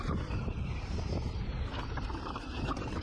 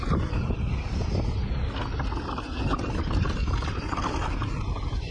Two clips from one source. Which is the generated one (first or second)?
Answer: first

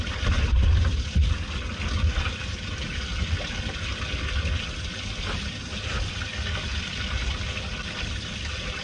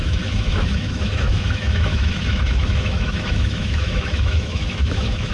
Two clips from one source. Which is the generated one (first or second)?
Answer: second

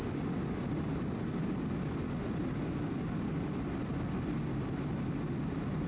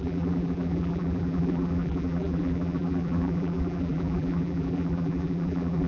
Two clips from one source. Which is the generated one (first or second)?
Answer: second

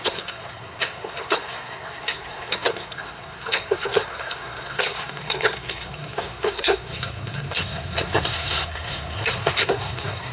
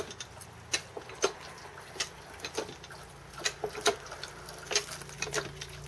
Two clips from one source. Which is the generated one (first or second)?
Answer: first